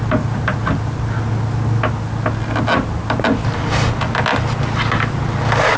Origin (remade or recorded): recorded